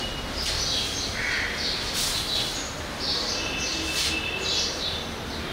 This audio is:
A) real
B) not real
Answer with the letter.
A